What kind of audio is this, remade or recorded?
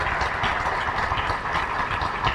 recorded